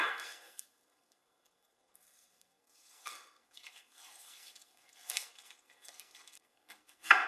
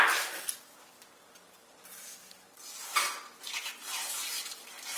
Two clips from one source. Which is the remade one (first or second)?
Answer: first